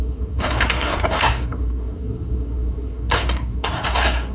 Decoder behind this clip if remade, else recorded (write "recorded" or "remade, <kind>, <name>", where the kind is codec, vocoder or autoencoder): remade, codec, SNAC